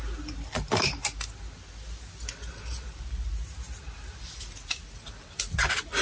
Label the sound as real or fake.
real